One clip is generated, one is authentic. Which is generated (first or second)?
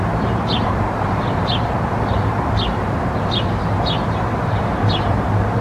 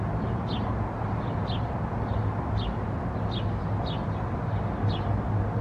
first